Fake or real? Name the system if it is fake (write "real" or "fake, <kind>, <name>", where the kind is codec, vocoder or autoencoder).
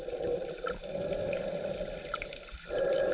fake, vocoder, BigVGAN v2